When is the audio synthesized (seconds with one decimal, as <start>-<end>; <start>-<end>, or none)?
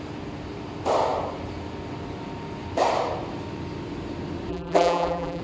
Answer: 4.5-5.4